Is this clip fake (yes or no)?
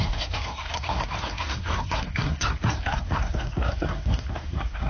yes